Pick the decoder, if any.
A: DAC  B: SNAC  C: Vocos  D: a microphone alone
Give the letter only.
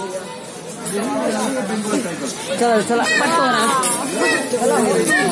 D